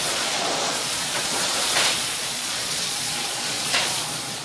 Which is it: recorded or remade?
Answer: remade